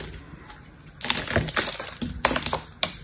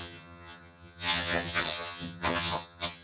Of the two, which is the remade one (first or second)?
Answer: second